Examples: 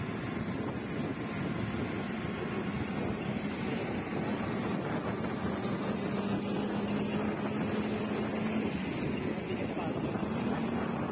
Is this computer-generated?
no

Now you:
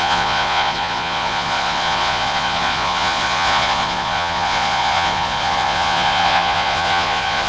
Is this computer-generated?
yes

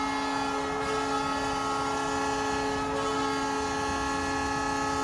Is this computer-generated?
no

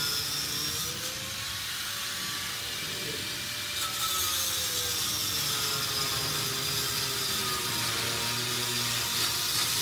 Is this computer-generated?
no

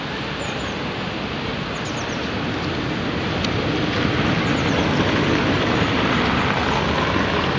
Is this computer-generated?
no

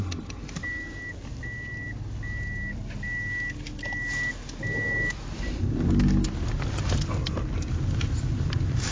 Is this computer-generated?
no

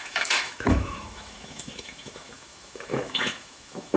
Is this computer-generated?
yes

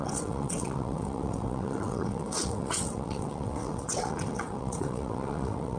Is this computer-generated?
yes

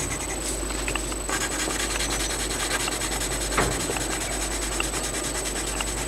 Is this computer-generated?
no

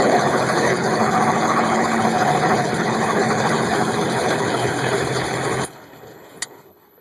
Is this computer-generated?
yes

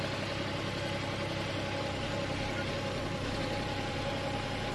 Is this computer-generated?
no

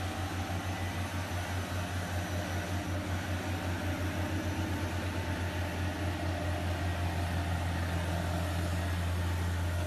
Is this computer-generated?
no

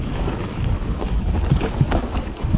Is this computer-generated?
yes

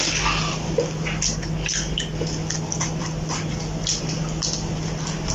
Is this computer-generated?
no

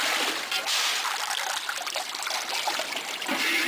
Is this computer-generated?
no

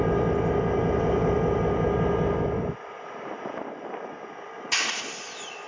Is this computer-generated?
no